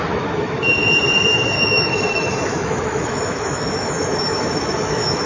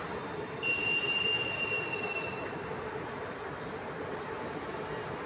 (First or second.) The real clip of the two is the second